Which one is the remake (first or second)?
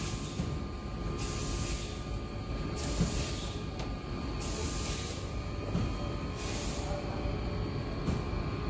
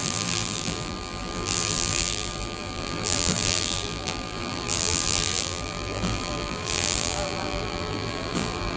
second